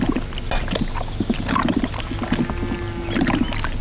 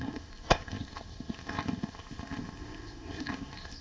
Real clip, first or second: first